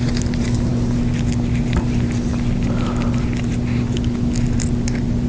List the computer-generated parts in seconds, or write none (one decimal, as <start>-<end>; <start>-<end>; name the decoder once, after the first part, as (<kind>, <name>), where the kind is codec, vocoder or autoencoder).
none